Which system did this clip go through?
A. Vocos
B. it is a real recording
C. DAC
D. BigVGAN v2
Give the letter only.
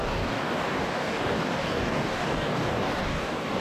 C